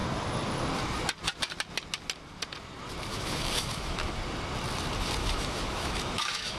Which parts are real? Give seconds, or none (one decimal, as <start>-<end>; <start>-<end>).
0.0-3.1; 4.2-5.2